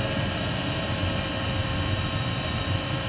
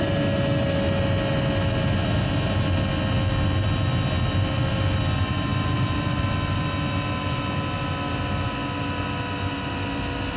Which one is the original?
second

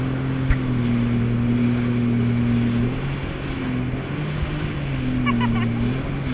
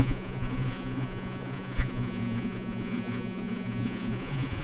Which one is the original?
first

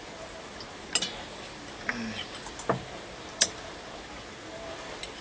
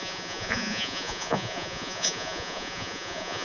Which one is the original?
first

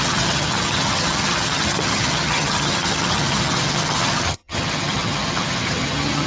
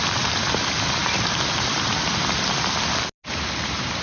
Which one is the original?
second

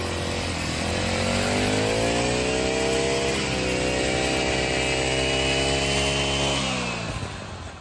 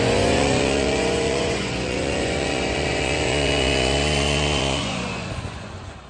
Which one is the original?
first